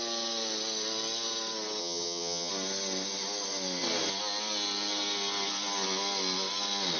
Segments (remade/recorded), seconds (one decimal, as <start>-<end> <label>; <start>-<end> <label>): 0.0-1.8 recorded; 1.8-2.5 remade; 2.5-7.0 recorded